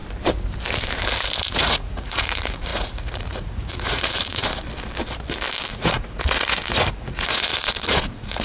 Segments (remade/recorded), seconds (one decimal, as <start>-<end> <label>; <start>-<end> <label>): 0.0-1.4 recorded; 1.4-4.4 remade; 4.4-5.7 recorded; 5.7-8.4 remade